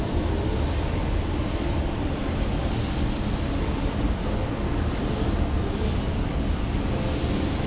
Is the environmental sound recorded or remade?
recorded